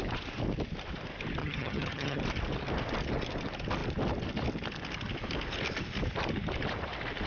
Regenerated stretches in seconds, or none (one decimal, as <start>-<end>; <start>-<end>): 1.4-2.2